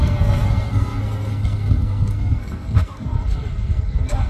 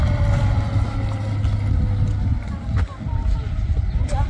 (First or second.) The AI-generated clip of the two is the first